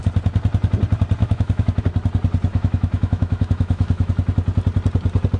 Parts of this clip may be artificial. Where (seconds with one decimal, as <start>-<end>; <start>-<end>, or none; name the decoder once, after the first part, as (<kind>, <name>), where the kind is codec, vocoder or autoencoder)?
1.2-1.8 (autoencoder, DAC-VAE); 2.5-4.1